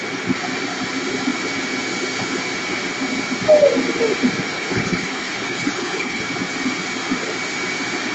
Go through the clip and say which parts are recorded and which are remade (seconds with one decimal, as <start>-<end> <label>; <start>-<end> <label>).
0.0-4.5 recorded; 4.5-6.2 remade; 6.2-8.1 recorded